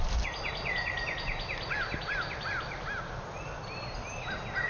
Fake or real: real